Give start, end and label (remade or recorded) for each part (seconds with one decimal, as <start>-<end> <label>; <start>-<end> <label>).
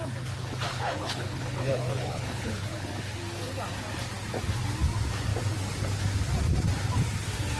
0.0-0.7 recorded; 0.7-2.9 remade; 2.9-7.6 recorded